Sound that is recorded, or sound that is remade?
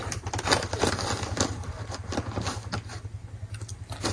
recorded